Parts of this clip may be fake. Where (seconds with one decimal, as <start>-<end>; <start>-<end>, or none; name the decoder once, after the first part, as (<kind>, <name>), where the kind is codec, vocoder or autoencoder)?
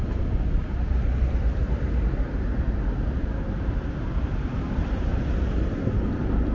none